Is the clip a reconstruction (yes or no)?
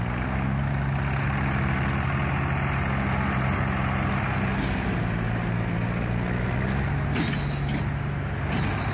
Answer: no